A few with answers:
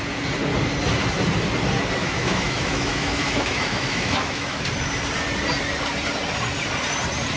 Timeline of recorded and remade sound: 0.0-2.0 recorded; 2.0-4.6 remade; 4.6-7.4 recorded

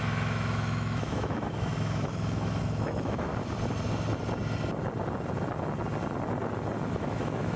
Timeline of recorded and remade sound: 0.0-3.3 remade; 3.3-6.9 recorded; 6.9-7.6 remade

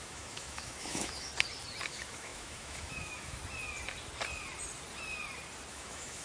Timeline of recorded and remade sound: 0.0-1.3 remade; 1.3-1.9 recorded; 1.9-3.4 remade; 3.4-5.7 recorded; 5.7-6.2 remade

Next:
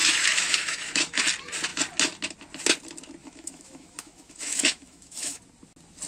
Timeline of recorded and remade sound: 0.0-1.2 remade; 1.2-3.2 recorded; 3.2-5.4 remade; 5.4-6.1 recorded